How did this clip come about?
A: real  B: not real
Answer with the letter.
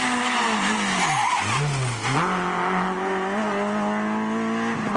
A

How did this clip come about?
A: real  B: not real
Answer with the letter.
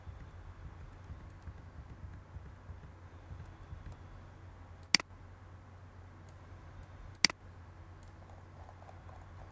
A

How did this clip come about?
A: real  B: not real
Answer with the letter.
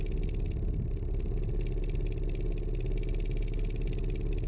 A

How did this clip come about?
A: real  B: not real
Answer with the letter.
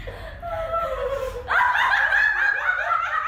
A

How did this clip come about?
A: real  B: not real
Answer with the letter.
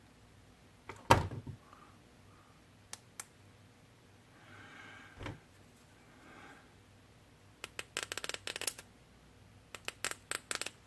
A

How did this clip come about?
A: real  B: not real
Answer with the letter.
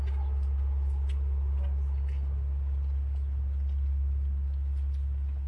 A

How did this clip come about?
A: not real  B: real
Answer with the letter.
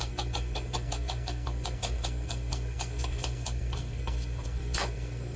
A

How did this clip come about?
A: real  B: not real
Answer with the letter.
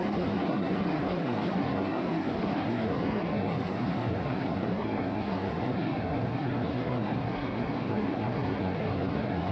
B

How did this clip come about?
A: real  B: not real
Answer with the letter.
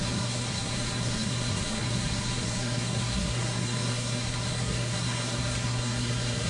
B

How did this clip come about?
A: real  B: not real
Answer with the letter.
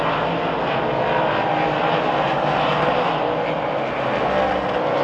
A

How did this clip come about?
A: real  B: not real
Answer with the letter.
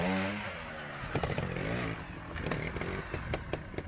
A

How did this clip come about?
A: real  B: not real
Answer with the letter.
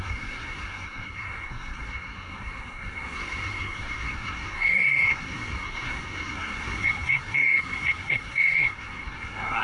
B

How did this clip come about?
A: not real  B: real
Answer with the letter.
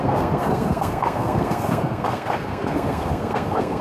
A